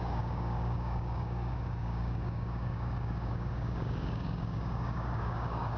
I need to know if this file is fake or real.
fake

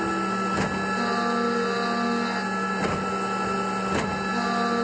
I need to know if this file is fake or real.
real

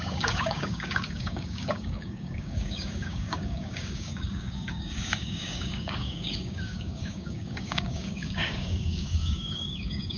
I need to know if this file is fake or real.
fake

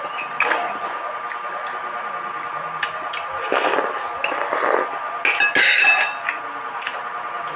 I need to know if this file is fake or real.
real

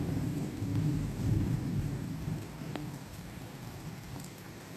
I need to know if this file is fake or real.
fake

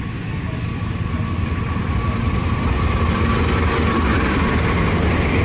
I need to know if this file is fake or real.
real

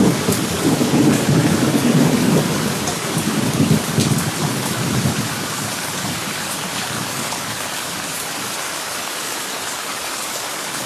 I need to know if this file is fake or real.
fake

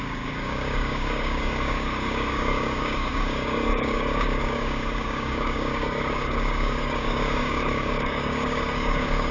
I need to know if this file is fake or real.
fake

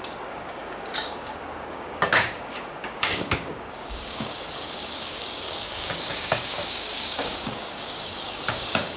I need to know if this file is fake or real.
fake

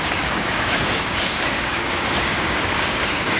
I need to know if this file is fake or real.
fake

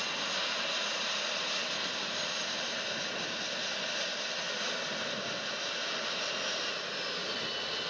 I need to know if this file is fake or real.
real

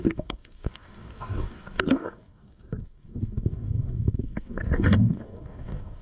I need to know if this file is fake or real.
fake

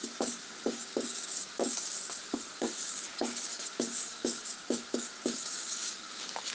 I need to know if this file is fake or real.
fake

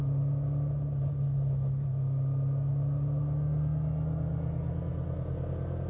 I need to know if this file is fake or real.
real